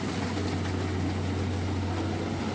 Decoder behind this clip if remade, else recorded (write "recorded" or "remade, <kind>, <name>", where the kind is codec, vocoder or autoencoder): recorded